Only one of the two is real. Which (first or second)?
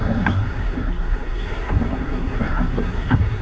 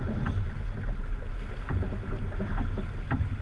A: second